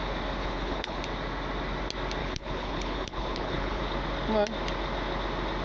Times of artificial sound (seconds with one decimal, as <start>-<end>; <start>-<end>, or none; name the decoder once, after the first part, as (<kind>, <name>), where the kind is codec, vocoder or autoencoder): 0.4-1.0 (codec, HILCodec); 2.2-3.8